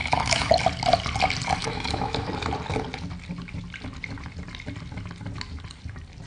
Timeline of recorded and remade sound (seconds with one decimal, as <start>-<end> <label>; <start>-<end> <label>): 0.0-0.5 remade; 0.5-1.6 recorded; 1.6-2.3 remade; 2.3-6.3 recorded